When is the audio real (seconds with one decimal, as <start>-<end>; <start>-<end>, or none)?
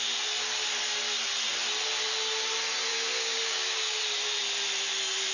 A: 0.0-2.9; 4.0-5.3